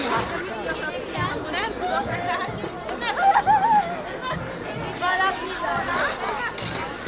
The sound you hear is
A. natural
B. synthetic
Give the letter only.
A